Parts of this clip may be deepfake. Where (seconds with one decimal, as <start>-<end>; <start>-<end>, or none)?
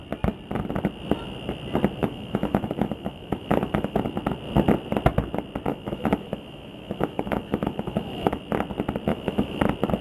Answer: 2.0-4.0; 5.7-8.4; 9.1-9.6